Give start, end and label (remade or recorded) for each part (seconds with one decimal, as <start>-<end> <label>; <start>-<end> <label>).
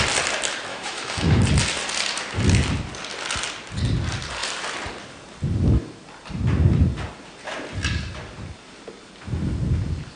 0.0-0.7 recorded; 0.7-1.4 remade; 1.4-10.2 recorded